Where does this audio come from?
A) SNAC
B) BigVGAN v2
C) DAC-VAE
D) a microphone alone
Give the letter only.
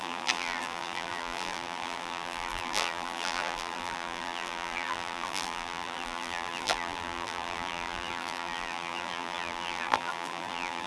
B